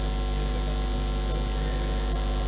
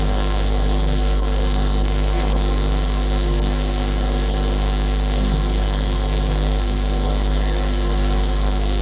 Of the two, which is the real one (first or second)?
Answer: first